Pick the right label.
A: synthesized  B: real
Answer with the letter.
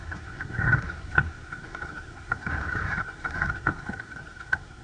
A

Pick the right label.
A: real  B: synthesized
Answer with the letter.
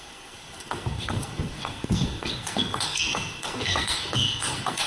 B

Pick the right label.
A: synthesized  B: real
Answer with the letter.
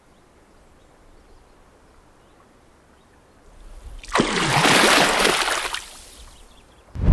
B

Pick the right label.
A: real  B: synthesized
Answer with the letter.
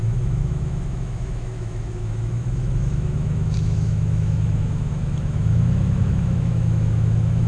B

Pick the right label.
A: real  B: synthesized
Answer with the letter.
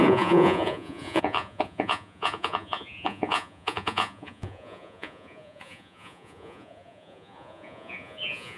B